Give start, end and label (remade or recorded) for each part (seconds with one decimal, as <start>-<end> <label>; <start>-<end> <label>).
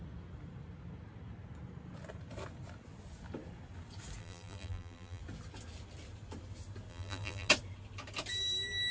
0.0-4.2 recorded; 4.2-5.2 remade; 5.2-6.9 recorded; 6.9-7.5 remade; 7.5-8.9 recorded